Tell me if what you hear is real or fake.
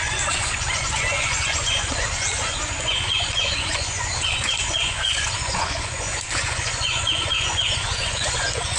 fake